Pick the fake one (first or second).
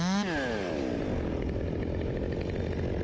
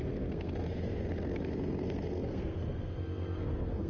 second